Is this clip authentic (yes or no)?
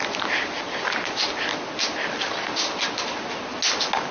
yes